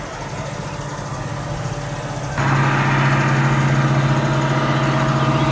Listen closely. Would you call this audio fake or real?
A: real